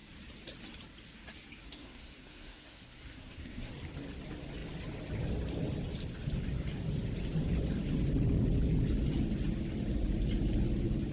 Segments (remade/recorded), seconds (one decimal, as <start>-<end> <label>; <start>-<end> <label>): 0.0-1.8 recorded; 1.8-3.7 remade; 3.7-11.1 recorded